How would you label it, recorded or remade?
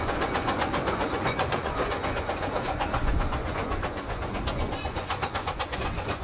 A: remade